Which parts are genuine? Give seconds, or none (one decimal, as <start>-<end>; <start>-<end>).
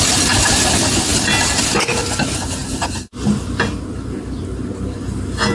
0.0-5.5